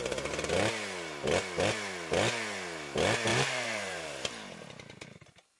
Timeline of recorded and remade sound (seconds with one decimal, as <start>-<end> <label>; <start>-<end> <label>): 0.0-3.3 recorded; 3.3-4.3 remade; 4.3-5.6 recorded